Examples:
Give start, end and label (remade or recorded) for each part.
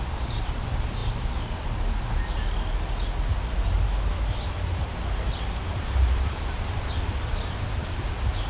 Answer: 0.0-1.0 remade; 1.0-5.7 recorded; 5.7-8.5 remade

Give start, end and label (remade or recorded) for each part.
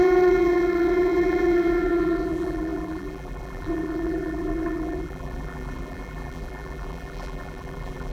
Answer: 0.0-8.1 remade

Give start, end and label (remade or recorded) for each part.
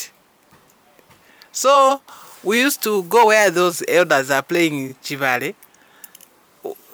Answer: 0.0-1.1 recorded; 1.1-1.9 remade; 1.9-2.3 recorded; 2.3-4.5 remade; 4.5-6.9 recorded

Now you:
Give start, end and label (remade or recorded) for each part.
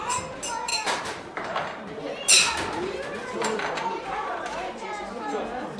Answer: 0.0-0.7 recorded; 0.7-1.3 remade; 1.3-3.2 recorded; 3.2-3.8 remade; 3.8-5.8 recorded